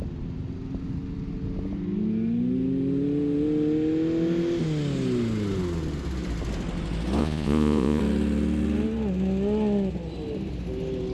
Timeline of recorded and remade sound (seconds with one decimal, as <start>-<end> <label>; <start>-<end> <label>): 0.0-7.2 recorded; 7.2-8.0 remade; 8.0-11.1 recorded